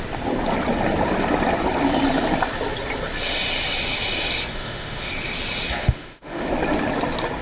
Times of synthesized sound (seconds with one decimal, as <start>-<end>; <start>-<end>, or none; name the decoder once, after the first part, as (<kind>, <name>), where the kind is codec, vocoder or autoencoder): 4.5-5.1 (autoencoder, DAC-VAE); 5.8-6.5